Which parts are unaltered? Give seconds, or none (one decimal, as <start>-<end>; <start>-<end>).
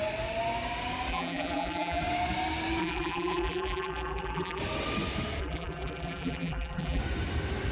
0.0-1.1; 2.0-2.8; 4.6-5.4; 7.0-7.7